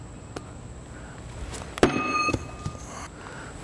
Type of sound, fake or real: real